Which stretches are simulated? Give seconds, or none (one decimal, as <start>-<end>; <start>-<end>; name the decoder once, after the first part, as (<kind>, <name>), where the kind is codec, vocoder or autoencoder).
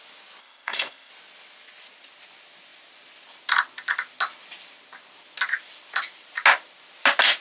0.4-1.1 (codec, ZipCodec)